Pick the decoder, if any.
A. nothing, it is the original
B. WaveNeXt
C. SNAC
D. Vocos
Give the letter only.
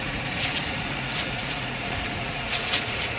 D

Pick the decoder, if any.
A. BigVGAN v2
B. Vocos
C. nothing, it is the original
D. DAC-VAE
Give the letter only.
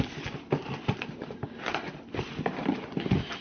C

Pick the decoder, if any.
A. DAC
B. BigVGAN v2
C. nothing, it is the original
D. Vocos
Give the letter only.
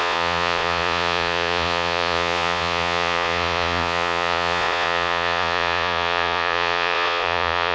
D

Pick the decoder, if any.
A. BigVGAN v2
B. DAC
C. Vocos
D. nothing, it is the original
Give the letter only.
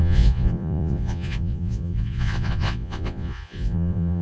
C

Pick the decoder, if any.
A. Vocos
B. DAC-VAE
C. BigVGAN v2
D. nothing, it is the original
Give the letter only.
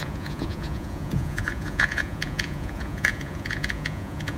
A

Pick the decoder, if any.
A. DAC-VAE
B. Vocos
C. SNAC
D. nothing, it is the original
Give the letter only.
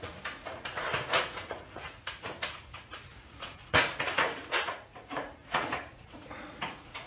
B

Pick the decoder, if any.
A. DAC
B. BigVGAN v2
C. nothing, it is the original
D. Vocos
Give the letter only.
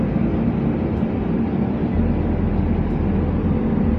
C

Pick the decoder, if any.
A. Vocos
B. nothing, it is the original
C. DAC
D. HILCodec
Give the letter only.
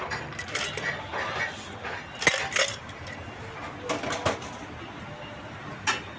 B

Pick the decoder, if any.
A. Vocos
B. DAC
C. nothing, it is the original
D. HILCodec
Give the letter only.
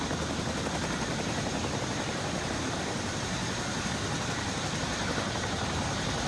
C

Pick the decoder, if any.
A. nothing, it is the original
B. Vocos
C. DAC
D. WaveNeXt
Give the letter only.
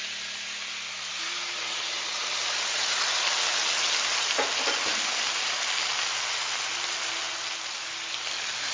A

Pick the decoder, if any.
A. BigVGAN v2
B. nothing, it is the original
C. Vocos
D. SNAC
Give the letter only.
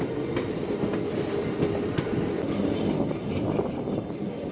B